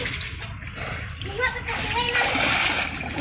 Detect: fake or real real